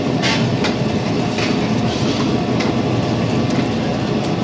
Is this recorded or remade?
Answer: recorded